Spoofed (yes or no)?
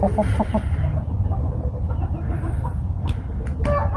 no